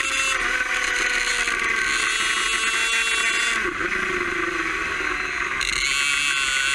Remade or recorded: recorded